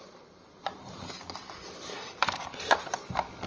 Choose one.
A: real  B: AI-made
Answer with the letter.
A